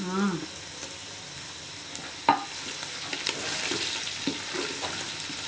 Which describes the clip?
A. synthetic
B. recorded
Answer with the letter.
B